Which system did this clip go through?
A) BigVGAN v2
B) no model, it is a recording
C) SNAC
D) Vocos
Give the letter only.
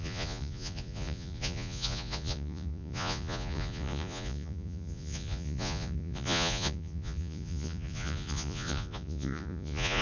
D